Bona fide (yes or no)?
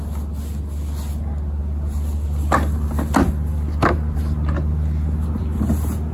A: yes